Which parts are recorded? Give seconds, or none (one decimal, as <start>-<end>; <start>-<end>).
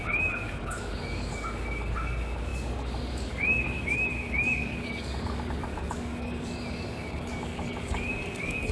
none